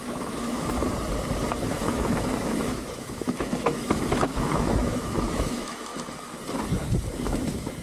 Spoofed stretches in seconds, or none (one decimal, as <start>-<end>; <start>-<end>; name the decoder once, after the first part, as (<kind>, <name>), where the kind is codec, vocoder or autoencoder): 0.0-0.8 (autoencoder, DAC-VAE); 1.9-5.9; 7.1-7.8